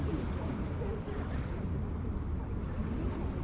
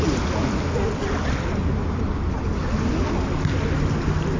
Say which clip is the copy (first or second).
first